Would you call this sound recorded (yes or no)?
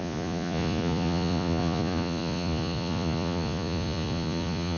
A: no